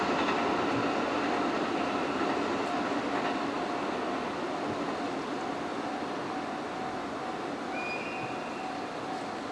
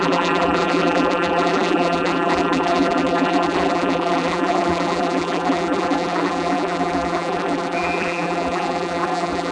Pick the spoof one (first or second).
second